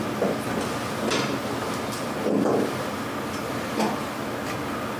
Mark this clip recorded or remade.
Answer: recorded